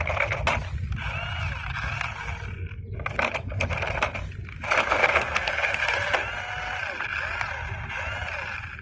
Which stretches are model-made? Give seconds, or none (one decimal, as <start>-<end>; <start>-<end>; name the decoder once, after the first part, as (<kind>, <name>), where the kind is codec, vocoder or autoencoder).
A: 5.0-5.8 (codec, SNAC)